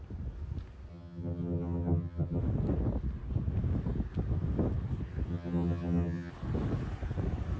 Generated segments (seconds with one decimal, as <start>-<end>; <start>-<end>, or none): 0.9-2.4; 5.3-6.3